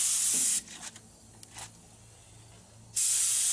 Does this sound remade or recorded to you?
recorded